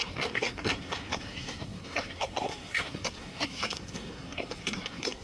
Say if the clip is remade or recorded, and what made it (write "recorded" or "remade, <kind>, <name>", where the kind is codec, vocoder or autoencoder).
remade, codec, SNAC